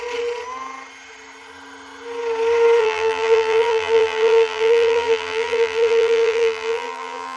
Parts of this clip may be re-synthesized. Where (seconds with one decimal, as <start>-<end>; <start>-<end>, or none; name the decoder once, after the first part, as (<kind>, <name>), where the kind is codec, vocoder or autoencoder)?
2.8-7.4 (vocoder, BigVGAN v2)